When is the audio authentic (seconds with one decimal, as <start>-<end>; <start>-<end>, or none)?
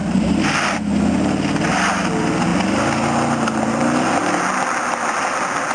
0.0-5.7